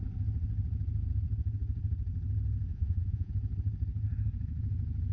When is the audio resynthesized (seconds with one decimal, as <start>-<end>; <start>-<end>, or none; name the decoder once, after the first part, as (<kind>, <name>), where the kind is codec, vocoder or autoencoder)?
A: 2.7-3.3 (vocoder, Vocos)